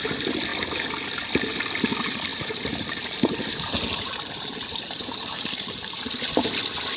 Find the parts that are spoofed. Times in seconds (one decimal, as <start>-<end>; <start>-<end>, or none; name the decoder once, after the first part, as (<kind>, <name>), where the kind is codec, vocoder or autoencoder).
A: 2.3-6.5 (vocoder, BigVGAN v2)